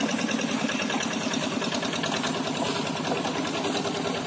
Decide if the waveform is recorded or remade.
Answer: recorded